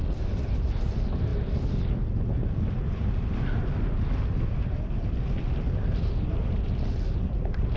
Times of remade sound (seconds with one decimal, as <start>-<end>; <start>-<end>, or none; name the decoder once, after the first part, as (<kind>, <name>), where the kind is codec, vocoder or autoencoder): none